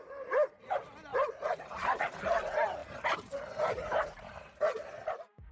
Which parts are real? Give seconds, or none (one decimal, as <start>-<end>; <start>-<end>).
0.0-1.1; 2.2-2.8